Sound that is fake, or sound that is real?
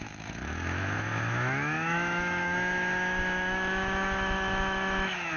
fake